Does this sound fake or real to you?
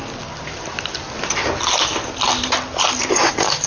real